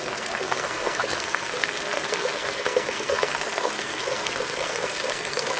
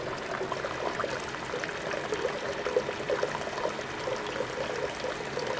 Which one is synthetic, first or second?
first